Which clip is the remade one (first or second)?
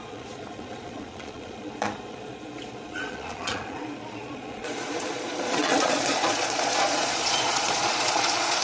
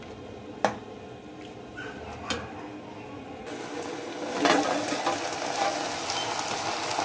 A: first